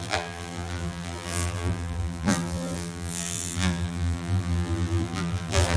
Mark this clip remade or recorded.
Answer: remade